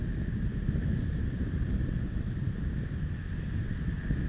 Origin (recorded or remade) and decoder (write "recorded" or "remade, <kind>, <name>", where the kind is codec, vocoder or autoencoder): recorded